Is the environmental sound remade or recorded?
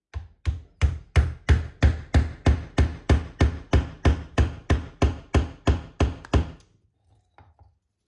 recorded